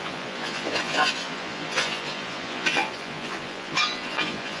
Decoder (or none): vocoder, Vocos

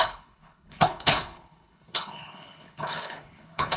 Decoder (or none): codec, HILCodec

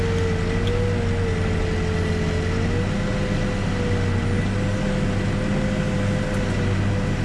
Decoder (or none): none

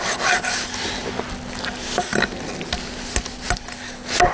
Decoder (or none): none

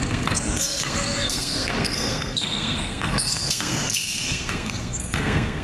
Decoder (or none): codec, SNAC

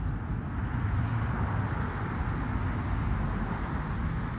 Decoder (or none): none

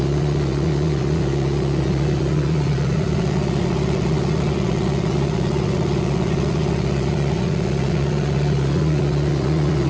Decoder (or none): vocoder, Vocos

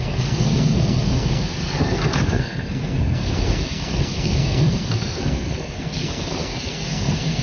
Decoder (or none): codec, SNAC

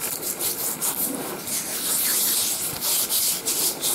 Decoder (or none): none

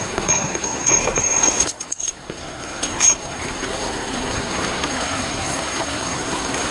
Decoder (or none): codec, SNAC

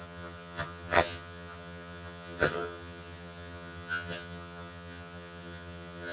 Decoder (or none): vocoder, HiFi-GAN